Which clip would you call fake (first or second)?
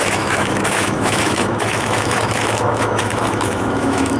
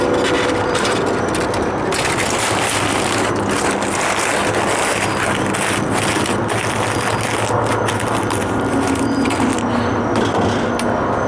first